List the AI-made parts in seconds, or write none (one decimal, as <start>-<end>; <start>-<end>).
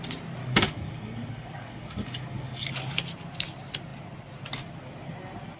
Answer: 0.4-2.7